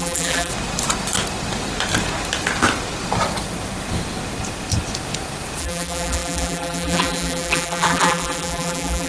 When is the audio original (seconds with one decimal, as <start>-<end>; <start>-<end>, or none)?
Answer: 0.5-5.6